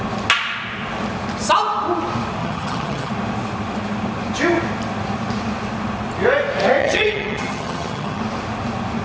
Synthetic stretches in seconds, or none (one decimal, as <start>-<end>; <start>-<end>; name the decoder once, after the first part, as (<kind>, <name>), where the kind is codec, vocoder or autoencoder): 2.4-3.1 (vocoder, HiFi-GAN); 6.8-8.2